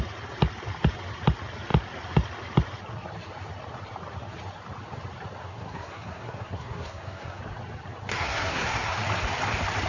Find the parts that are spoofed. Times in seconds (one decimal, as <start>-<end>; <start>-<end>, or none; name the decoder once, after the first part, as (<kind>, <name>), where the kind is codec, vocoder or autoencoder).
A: 5.4-7.4 (codec, SNAC); 8.1-9.0